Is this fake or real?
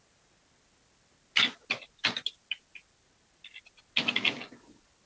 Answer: real